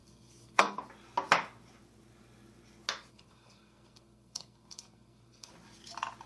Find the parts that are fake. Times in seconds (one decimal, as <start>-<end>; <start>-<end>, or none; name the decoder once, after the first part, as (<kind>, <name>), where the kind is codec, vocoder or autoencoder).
0.0-0.8 (codec, SNAC); 3.1-5.5